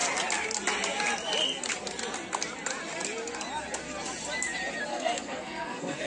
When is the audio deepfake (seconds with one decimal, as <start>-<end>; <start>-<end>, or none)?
4.9-6.1